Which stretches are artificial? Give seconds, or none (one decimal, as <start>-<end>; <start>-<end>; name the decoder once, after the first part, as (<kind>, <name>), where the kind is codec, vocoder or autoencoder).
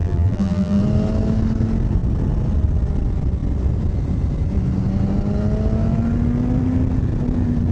0.0-0.8 (vocoder, BigVGAN v2)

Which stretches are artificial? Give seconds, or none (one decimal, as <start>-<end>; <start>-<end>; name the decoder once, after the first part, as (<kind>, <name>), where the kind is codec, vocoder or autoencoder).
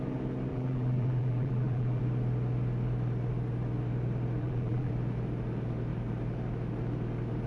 0.5-2.0 (vocoder, BigVGAN v2); 4.4-4.9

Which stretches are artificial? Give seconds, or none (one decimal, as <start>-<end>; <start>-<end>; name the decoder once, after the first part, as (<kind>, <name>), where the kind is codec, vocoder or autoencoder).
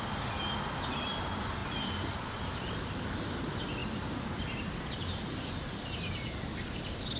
1.6-3.0 (vocoder, BigVGAN v2); 3.8-6.4